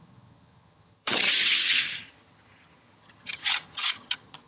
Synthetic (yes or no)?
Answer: yes